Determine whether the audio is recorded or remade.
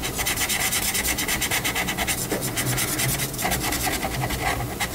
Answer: recorded